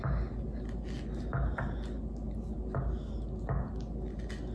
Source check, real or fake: real